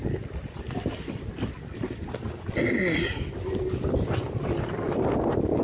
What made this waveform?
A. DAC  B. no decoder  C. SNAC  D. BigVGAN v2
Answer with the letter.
B